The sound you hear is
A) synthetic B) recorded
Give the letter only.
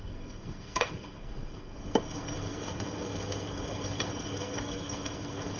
A